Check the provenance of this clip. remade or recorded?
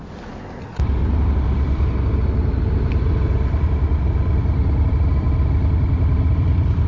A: recorded